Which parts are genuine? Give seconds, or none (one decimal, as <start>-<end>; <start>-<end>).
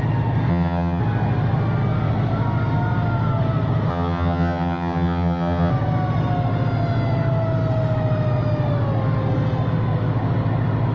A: 0.0-0.5; 1.0-3.9; 5.7-10.9